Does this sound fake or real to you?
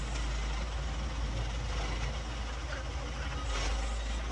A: real